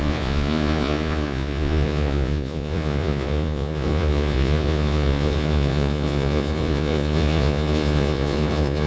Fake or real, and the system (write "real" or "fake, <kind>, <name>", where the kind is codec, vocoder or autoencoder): fake, vocoder, Vocos